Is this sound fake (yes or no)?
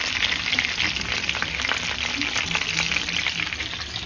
no